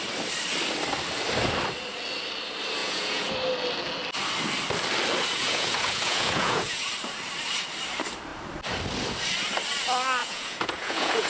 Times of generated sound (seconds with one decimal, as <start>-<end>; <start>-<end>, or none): 2.8-3.3; 5.3-6.9; 10.2-11.3